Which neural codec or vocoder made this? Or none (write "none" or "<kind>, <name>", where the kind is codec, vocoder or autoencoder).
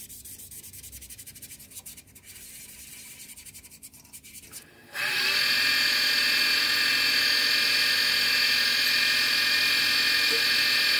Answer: vocoder, BigVGAN v2